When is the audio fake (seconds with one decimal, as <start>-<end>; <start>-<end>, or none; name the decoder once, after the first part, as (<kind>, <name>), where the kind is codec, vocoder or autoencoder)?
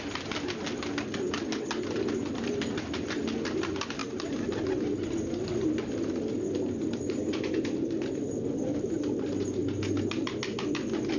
none